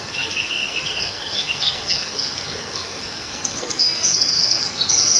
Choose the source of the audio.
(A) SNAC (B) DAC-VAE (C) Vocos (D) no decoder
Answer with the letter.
A